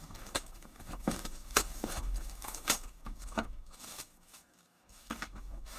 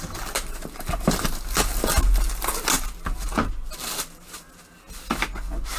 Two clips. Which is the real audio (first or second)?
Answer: second